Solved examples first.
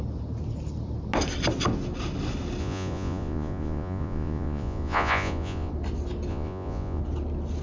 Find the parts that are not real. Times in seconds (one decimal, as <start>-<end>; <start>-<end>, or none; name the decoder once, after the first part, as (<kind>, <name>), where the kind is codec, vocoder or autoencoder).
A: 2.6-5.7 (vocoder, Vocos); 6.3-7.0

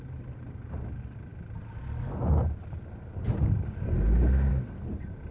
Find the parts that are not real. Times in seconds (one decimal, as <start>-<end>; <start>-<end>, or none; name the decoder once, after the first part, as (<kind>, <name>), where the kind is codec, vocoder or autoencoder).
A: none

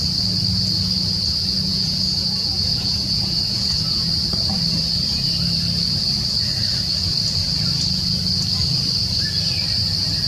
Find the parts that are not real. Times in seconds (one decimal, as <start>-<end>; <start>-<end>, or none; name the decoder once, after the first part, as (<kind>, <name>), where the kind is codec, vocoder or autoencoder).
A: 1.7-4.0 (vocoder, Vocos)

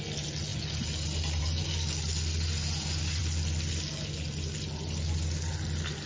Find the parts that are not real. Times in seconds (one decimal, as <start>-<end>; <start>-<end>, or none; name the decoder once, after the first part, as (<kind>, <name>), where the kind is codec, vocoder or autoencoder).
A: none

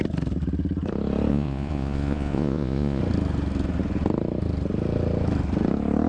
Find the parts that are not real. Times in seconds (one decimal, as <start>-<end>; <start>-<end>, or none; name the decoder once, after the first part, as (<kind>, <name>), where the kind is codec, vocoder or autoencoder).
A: 1.3-3.0 (vocoder, Vocos)